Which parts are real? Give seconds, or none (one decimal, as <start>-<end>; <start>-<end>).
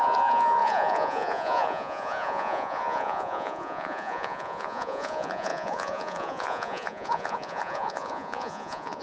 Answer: none